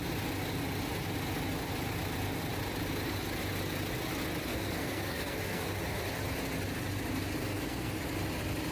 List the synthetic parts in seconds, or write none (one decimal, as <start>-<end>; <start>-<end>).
4.5-5.7; 7.4-8.0

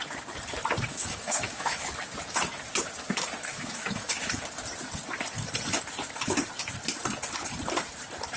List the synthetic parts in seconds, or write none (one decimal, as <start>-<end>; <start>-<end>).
0.9-1.9; 3.5-4.4